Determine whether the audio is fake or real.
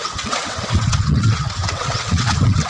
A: fake